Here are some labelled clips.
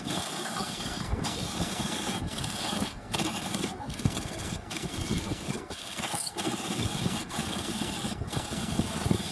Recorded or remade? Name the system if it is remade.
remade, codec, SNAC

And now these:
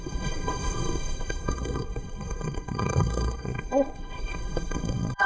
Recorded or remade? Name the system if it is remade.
remade, codec, SNAC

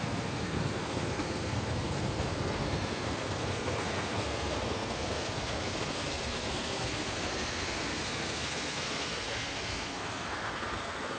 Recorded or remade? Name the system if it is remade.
remade, codec, SNAC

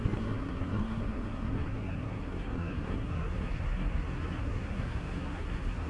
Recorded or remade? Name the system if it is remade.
remade, codec, SNAC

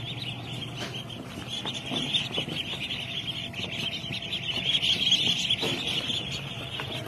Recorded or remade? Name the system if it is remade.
recorded